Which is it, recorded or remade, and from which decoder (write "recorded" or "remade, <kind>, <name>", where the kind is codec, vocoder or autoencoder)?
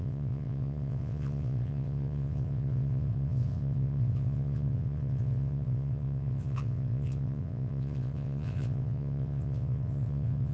remade, vocoder, WaveNeXt